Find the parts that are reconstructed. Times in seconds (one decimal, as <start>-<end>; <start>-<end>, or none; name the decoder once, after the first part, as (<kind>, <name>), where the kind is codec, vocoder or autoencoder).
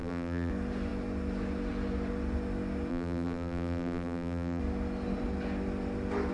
0.0-0.5 (vocoder, BigVGAN v2); 2.9-4.6